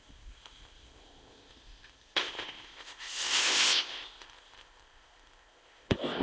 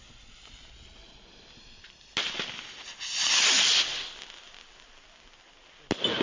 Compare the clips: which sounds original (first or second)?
second